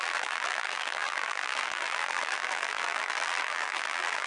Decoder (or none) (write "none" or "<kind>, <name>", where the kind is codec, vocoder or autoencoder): vocoder, BigVGAN v2